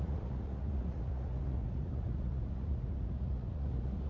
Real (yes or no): no